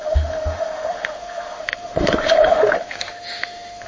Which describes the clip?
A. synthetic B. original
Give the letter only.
A